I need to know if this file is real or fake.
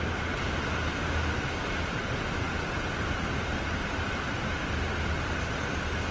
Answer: real